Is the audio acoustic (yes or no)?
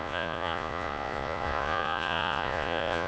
no